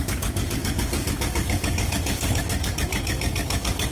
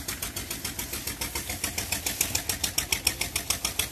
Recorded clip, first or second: second